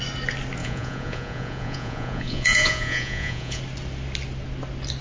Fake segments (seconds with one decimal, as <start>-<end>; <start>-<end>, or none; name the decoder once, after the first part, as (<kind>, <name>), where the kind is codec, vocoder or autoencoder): 0.6-3.6 (vocoder, Vocos)